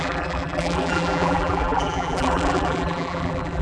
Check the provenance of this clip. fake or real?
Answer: fake